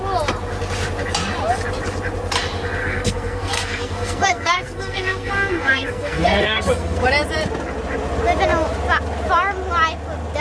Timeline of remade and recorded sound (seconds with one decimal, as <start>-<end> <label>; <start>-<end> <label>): 0.0-2.8 recorded; 2.8-7.0 remade; 7.0-10.4 recorded